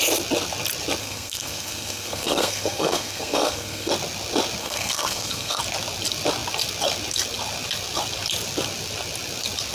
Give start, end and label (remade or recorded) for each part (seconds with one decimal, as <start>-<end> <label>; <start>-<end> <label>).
0.0-1.0 recorded; 1.0-3.9 remade; 3.9-4.6 recorded; 4.6-5.6 remade; 5.6-9.7 recorded